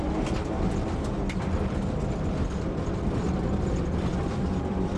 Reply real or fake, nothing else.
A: fake